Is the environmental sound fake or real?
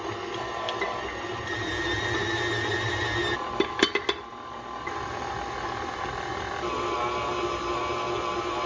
real